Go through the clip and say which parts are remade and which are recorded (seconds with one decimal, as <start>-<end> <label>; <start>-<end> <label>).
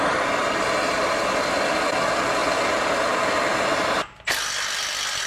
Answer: 0.0-5.3 recorded